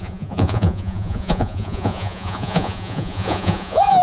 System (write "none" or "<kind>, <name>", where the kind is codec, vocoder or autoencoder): vocoder, Vocos